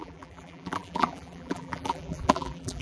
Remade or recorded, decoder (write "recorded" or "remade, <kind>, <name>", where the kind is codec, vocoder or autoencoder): remade, vocoder, BigVGAN v2